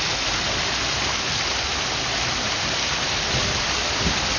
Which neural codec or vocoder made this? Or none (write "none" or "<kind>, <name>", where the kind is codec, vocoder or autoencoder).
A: none